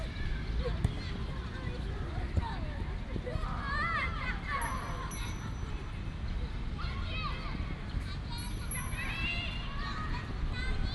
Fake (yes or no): no